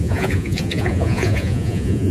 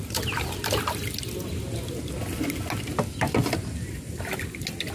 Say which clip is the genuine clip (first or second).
second